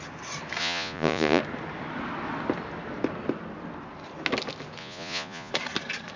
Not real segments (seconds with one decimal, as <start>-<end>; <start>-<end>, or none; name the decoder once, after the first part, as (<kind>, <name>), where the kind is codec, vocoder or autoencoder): 0.6-1.4 (vocoder, Vocos); 4.8-5.5